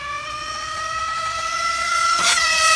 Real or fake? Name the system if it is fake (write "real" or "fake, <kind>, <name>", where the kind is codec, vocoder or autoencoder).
fake, vocoder, Vocos